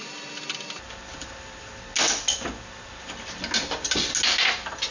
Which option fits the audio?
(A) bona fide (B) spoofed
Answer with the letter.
A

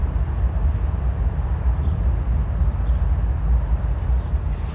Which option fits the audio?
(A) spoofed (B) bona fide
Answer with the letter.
B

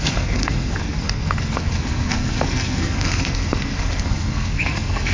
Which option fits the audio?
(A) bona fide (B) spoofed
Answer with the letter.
B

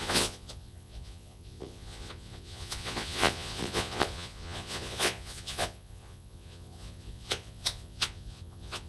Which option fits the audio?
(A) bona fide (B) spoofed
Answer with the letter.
B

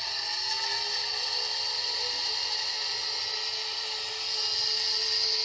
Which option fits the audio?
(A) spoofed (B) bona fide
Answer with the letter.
B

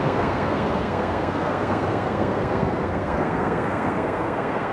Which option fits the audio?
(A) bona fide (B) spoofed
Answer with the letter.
B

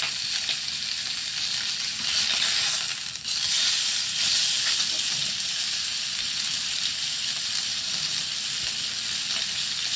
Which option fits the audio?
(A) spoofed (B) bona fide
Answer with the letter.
B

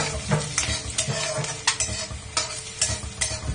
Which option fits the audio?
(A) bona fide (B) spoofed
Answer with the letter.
A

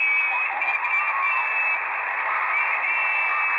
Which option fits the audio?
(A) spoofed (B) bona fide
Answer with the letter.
B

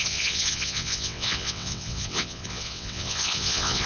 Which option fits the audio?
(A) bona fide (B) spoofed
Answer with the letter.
B